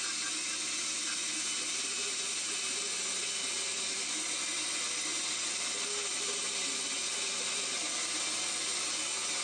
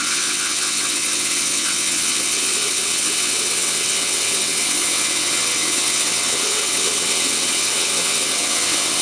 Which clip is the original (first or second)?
first